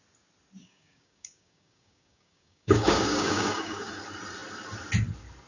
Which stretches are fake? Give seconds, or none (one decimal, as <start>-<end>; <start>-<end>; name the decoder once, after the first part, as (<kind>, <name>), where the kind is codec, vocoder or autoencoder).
0.6-3.9 (codec, DAC)